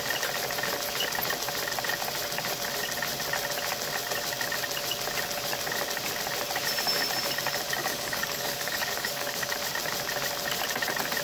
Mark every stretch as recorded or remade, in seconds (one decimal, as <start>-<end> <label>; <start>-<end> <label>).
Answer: 0.0-7.8 recorded; 7.8-9.5 remade; 9.5-11.2 recorded